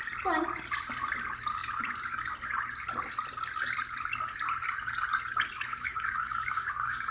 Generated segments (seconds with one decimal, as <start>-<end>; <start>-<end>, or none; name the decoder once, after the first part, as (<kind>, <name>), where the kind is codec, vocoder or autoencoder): 5.7-7.1 (codec, DAC)